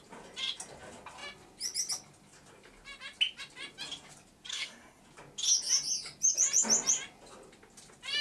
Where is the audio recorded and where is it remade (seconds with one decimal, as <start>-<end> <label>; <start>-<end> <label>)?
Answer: 0.0-4.5 recorded; 4.5-5.0 remade; 5.0-8.2 recorded